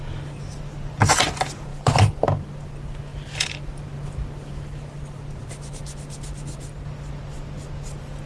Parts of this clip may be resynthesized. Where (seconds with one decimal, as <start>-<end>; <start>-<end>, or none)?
1.7-2.6; 3.1-3.8